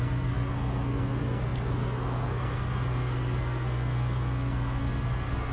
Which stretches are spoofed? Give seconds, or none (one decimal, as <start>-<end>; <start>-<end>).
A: 0.0-5.5